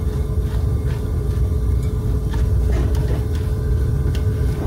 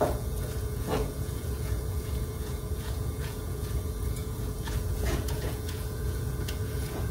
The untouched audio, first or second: first